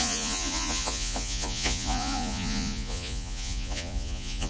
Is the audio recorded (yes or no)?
no